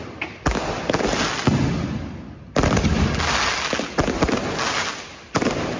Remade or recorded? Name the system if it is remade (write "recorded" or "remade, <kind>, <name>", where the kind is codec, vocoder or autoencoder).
recorded